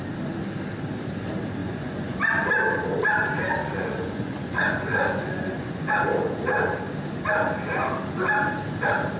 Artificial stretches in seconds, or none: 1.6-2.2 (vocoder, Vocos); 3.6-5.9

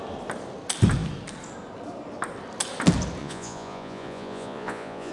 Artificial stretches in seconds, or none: 3.2-5.1 (vocoder, Vocos)

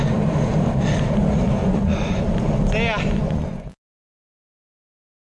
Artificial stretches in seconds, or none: 1.6-2.2 (vocoder, Vocos); 3.2-4.7

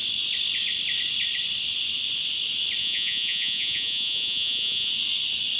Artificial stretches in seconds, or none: 2.8-4.9 (vocoder, Vocos)